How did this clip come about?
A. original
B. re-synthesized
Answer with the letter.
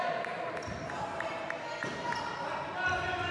A